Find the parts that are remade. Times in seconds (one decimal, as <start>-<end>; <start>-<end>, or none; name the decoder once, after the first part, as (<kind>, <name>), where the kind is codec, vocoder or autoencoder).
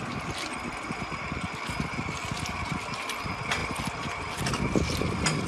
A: none